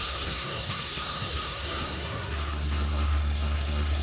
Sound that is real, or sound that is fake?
fake